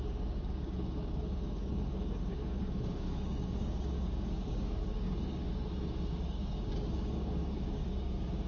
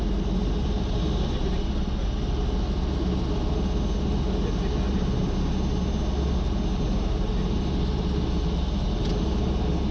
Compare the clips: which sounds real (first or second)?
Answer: second